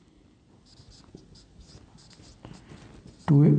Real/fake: real